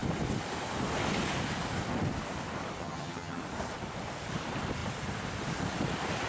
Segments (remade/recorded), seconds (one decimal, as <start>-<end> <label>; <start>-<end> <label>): 0.0-2.8 recorded; 2.8-3.4 remade; 3.4-6.3 recorded